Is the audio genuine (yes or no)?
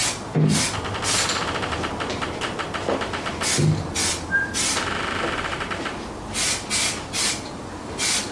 yes